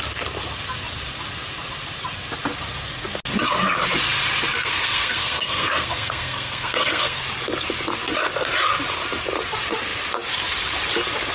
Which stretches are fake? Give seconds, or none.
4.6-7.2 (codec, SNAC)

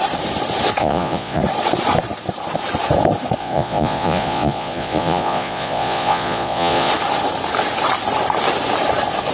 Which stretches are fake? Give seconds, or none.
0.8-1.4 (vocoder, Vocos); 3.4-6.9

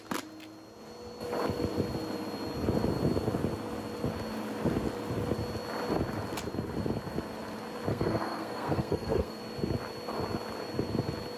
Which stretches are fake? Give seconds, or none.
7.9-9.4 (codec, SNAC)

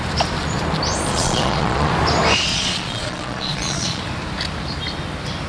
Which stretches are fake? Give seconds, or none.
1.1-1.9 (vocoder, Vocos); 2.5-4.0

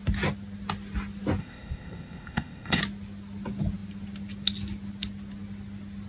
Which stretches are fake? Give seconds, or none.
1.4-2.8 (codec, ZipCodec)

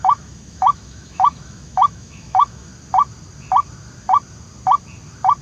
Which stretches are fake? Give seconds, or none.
0.0-2.7 (autoencoder, DAC-VAE)